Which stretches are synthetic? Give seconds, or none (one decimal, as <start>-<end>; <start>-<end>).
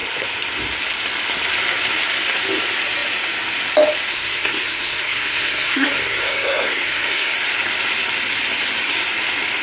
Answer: 4.1-7.3